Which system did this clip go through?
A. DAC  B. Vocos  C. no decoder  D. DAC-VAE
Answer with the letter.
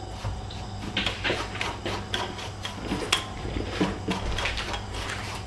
C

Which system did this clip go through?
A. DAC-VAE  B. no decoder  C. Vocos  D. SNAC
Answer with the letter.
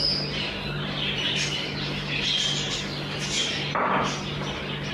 B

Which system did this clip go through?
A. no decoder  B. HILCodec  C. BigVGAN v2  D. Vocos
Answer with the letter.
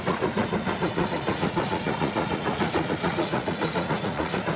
D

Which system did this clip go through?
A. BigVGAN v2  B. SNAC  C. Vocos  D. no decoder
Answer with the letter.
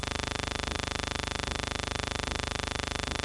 D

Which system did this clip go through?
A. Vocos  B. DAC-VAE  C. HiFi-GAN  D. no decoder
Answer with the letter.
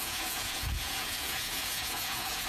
A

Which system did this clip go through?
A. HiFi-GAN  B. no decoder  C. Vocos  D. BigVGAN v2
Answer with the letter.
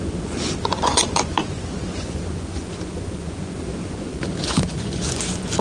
C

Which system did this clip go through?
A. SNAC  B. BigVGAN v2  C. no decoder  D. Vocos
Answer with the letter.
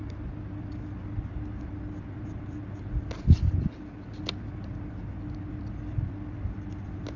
C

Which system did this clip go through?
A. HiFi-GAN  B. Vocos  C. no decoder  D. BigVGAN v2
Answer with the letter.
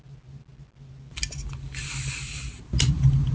C